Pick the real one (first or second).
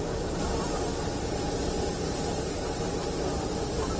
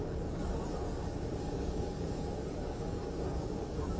first